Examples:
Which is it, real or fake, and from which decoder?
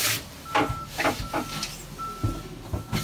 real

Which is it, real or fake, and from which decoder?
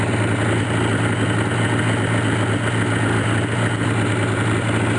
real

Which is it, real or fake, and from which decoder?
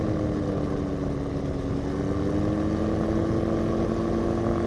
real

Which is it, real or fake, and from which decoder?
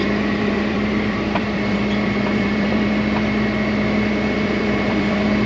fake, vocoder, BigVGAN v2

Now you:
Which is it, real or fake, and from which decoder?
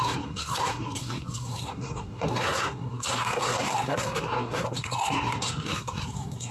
fake, codec, SNAC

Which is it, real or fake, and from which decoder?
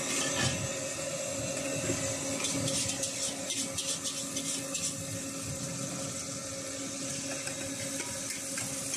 real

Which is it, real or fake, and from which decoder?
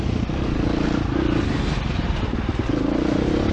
real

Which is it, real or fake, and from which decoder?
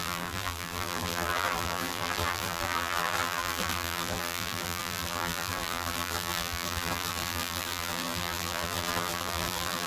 fake, vocoder, BigVGAN v2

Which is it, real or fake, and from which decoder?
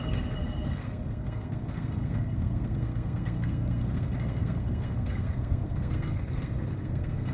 fake, codec, SNAC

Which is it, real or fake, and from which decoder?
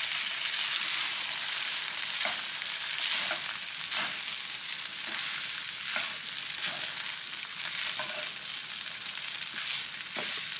real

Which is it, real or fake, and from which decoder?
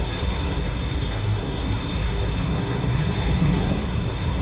fake, codec, SNAC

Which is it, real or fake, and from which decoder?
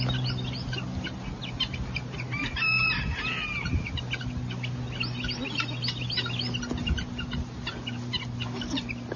real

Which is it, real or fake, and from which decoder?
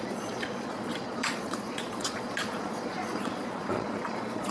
fake, vocoder, Vocos